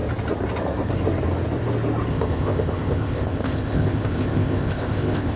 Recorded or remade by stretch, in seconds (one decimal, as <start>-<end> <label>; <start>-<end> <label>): 0.0-2.1 recorded; 2.1-5.4 remade